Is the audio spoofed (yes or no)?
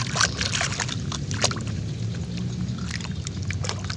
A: no